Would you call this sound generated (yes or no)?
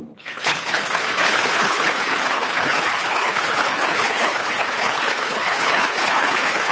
yes